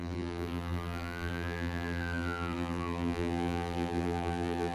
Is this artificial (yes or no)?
yes